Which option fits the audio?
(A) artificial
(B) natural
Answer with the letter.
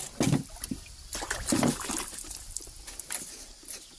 B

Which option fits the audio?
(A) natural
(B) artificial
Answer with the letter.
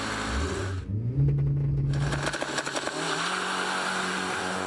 A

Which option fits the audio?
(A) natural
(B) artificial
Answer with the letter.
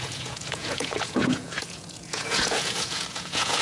B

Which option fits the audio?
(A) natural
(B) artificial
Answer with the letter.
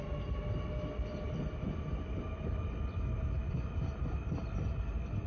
A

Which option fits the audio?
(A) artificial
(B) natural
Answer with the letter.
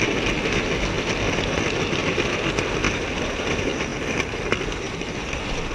B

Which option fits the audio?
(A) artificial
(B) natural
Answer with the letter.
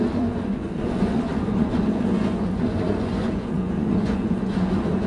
A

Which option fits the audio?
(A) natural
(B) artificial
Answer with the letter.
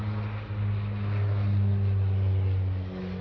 A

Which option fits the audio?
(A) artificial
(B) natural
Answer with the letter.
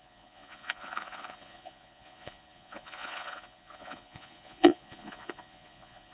A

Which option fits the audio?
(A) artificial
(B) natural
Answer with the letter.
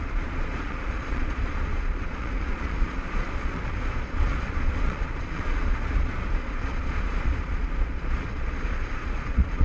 A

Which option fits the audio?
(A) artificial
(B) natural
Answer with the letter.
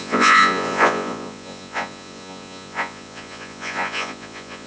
A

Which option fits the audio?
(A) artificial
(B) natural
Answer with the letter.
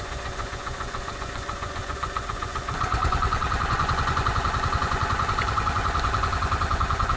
A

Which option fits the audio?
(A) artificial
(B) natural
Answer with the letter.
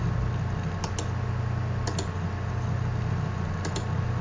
B